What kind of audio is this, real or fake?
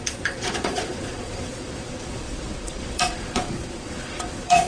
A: fake